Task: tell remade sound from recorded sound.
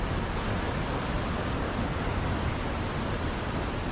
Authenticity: recorded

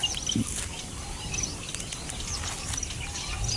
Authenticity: recorded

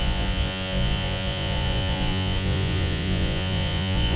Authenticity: remade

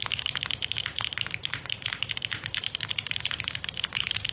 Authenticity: recorded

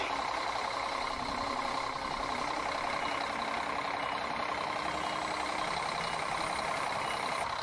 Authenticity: recorded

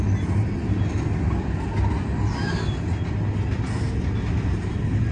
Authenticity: recorded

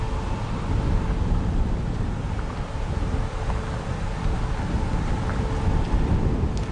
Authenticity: recorded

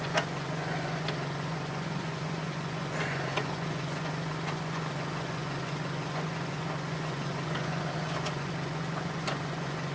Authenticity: remade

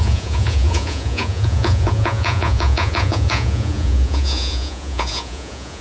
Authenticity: remade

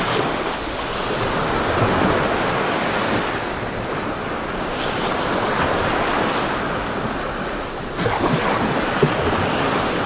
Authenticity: recorded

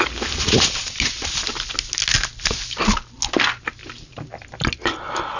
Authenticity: recorded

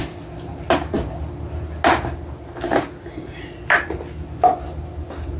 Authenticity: recorded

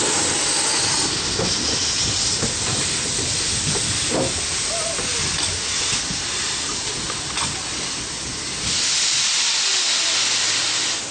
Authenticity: recorded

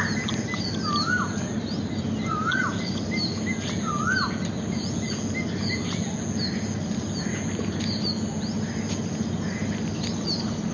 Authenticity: recorded